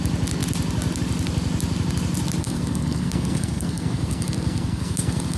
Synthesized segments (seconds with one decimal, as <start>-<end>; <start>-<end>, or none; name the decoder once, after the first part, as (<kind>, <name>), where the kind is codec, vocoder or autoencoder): 2.4-5.4 (codec, SNAC)